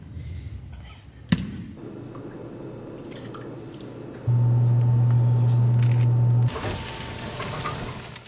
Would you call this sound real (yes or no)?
yes